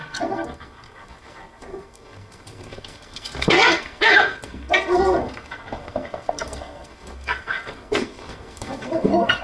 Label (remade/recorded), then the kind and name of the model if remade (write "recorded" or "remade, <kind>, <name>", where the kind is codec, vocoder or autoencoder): remade, codec, SNAC